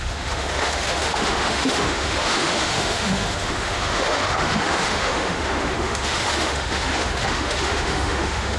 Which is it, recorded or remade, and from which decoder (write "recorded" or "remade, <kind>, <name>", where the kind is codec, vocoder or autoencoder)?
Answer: remade, autoencoder, DAC-VAE